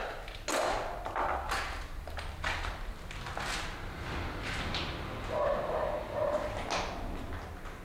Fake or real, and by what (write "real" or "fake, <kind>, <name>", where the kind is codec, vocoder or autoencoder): real